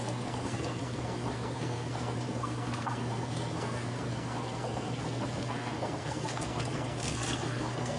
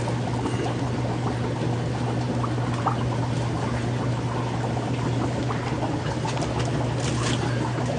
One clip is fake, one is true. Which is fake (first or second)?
first